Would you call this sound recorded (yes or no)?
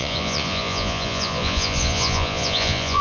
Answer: no